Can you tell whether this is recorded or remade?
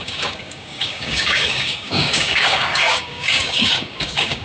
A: remade